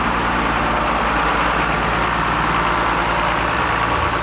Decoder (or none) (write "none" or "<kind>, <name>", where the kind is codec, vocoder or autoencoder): none